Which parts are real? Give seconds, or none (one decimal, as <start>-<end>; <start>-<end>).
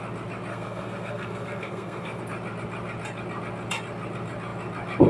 0.0-0.5; 2.2-5.1